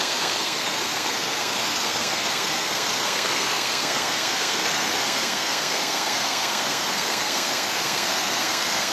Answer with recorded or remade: remade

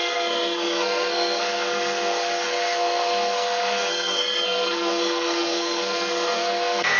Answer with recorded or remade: remade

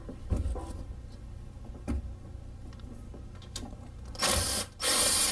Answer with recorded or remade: recorded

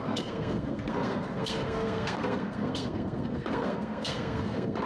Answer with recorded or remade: remade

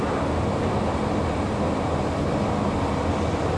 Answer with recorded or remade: recorded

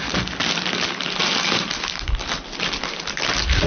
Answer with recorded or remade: recorded